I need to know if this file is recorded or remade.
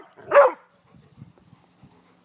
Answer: recorded